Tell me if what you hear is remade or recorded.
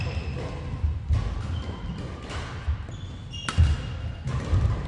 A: recorded